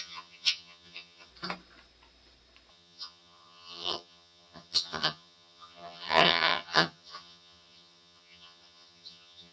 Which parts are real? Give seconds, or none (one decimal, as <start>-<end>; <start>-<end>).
1.3-2.7